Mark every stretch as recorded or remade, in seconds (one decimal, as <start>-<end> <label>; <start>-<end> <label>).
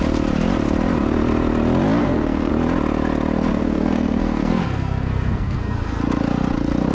0.0-2.0 recorded; 2.0-2.5 remade; 2.5-3.5 recorded; 3.5-6.0 remade; 6.0-6.9 recorded